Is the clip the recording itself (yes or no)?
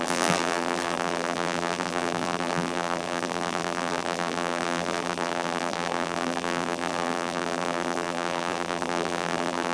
no